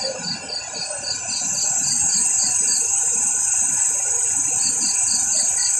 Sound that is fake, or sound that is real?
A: real